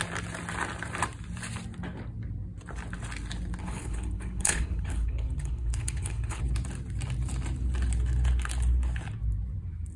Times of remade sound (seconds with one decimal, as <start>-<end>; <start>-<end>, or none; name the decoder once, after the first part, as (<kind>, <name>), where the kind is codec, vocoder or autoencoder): 3.6-6.4 (codec, HILCodec)